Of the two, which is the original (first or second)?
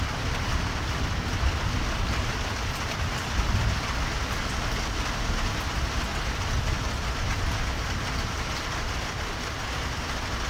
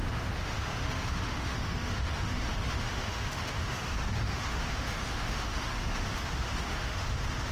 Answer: first